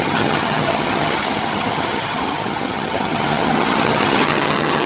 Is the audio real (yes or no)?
no